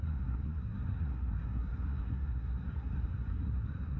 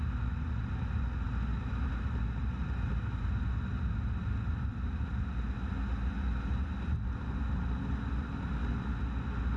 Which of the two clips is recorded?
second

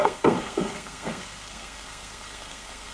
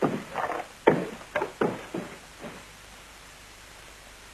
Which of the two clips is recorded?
second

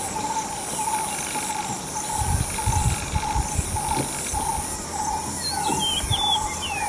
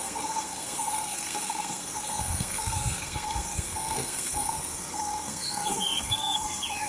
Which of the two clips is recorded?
first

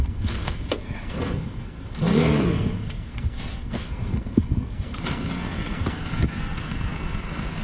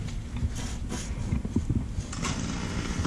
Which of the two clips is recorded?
second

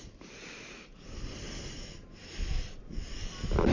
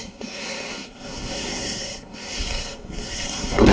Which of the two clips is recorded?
first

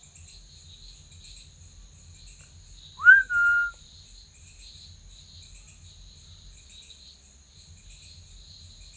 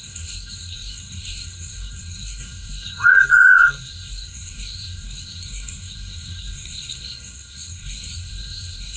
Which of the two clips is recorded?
first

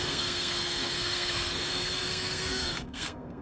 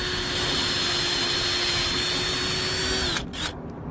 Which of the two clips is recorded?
second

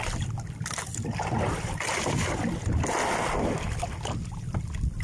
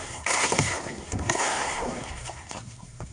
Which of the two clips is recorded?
first